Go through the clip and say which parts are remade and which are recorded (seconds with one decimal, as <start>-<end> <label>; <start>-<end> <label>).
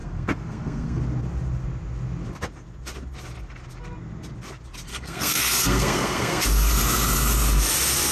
0.0-1.0 remade; 1.0-4.9 recorded; 4.9-6.4 remade; 6.4-8.1 recorded